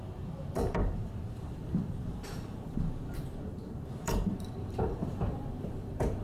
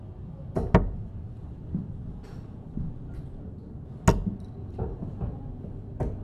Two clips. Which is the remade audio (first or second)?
first